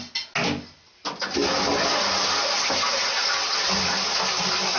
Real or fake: real